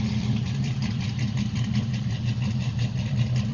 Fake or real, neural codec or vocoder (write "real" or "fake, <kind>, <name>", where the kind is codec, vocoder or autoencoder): fake, vocoder, BigVGAN v2